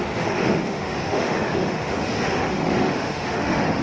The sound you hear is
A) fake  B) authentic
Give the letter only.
A